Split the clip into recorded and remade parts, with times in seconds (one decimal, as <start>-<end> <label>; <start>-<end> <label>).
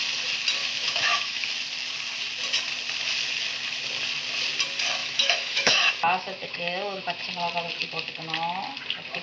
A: 0.0-0.6 recorded; 0.6-1.5 remade; 1.5-5.0 recorded; 5.0-5.9 remade; 5.9-6.4 recorded; 6.4-7.0 remade; 7.0-9.2 recorded